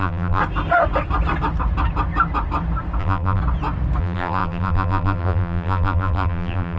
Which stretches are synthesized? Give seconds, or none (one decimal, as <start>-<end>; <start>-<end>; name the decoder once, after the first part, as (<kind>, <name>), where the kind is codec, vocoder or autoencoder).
0.0-0.4 (vocoder, BigVGAN v2); 3.0-3.4; 4.0-6.8